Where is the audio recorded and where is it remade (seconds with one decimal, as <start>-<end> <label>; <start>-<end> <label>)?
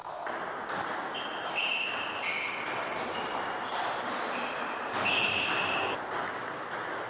0.0-7.1 recorded